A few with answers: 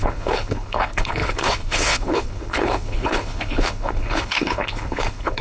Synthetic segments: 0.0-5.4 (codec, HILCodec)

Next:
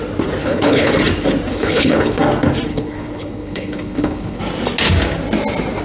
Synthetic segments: 0.4-0.9 (codec, HILCodec); 1.5-2.2; 2.7-4.4

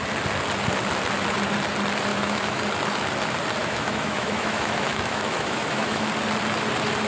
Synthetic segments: 2.1-2.6 (autoencoder, DAC-VAE); 3.6-6.1

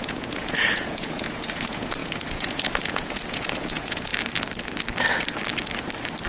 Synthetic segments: 0.0-4.1 (vocoder, Vocos)

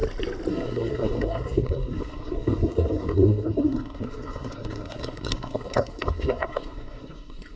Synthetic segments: 0.5-7.6 (codec, SNAC)

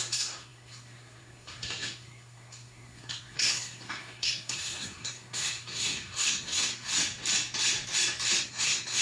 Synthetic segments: 0.0-6.9 (codec, SNAC); 8.4-9.0

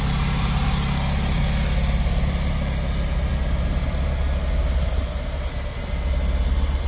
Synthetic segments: none

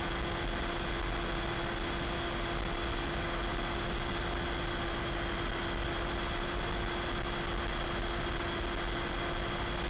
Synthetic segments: none